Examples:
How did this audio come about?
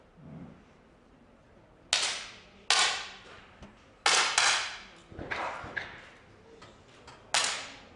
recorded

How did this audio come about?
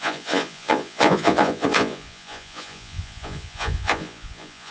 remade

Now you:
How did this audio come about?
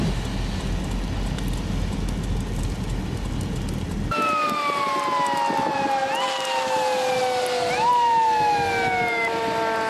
recorded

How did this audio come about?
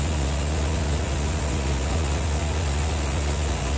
remade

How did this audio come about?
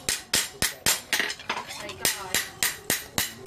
recorded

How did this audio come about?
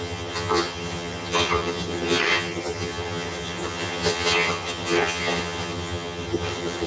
remade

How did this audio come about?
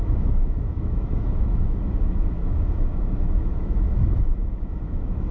remade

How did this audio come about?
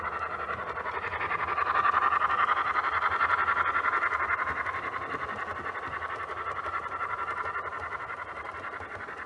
recorded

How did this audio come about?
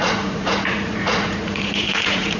remade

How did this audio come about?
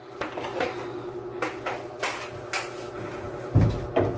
recorded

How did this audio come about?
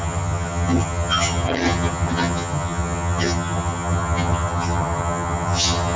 remade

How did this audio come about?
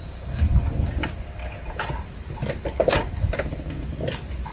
remade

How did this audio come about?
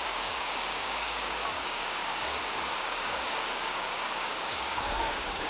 remade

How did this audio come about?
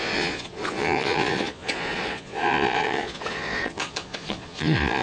remade